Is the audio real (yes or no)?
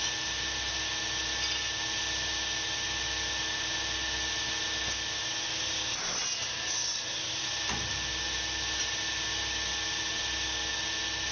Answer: yes